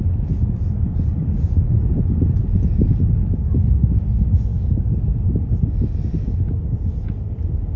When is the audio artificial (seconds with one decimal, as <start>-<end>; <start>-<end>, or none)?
4.5-5.3